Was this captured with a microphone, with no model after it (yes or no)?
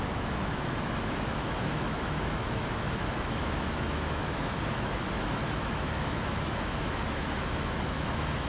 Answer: no